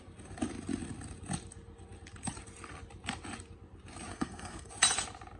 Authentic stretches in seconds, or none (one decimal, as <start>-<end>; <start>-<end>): 0.0-4.1; 4.7-5.4